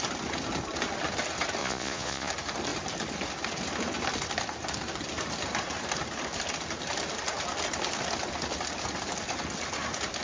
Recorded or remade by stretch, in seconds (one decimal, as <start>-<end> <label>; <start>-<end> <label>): 0.0-1.6 recorded; 1.6-2.3 remade; 2.3-10.2 recorded